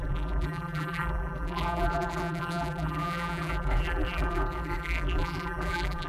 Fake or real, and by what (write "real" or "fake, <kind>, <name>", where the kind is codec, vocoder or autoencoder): fake, vocoder, BigVGAN v2